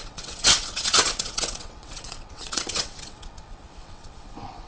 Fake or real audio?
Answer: fake